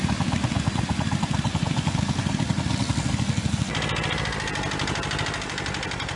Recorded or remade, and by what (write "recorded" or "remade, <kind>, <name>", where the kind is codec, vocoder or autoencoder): recorded